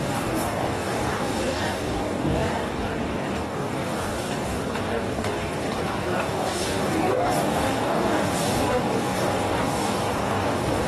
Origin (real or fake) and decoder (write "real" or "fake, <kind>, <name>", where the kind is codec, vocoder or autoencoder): fake, codec, DAC